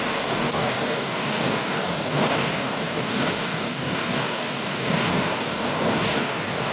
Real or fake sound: fake